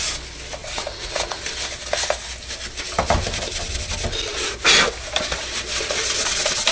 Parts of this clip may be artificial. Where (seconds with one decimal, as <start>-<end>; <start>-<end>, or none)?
0.6-1.4